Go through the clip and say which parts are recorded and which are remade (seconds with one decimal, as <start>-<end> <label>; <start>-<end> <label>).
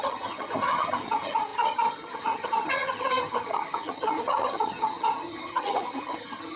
0.0-6.6 remade